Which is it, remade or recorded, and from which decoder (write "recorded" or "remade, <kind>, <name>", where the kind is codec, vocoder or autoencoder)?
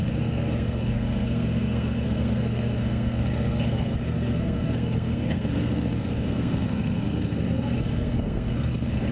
remade, codec, SNAC